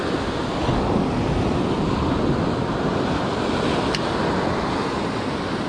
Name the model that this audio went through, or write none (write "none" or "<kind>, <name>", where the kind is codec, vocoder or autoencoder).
none